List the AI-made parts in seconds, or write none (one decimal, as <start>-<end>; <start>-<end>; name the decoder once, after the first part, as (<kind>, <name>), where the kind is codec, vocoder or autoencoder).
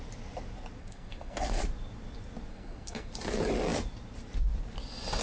0.8-1.6 (codec, SNAC); 2.5-3.1